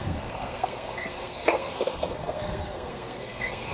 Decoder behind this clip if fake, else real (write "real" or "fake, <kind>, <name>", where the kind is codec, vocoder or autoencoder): fake, codec, SNAC